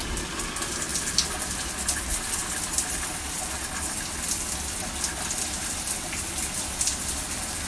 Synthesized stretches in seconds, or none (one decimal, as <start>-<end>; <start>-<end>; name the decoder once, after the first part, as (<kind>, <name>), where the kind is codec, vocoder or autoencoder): none